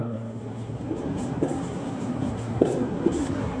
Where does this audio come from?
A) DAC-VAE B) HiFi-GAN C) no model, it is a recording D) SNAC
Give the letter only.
D